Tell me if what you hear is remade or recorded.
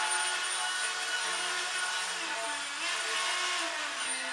recorded